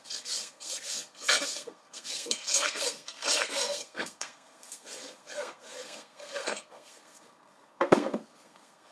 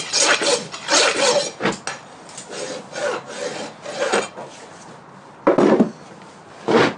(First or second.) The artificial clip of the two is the first